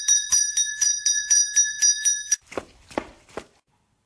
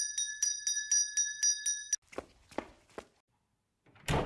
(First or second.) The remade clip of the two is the first